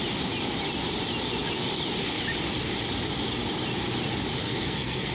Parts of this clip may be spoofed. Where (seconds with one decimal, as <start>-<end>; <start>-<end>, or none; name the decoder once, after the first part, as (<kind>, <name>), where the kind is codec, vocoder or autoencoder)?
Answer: 4.4-5.1 (codec, SNAC)